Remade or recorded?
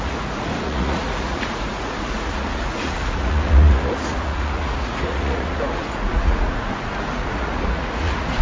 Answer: remade